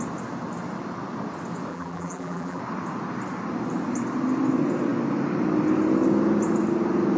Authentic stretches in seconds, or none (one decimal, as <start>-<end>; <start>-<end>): 0.0-1.7; 2.6-7.2